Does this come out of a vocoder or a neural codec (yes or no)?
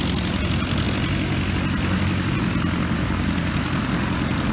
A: no